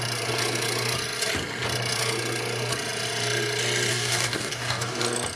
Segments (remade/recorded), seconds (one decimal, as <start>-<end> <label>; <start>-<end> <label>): 0.0-3.9 recorded; 3.9-5.0 remade; 5.0-5.4 recorded